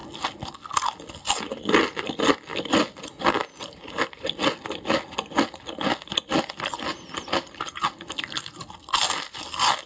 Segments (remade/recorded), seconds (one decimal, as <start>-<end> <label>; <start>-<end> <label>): 0.0-9.9 recorded